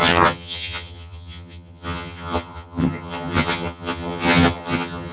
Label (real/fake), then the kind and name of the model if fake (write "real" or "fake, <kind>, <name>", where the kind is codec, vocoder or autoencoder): fake, vocoder, HiFi-GAN